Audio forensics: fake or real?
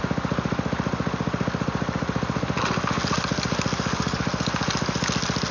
real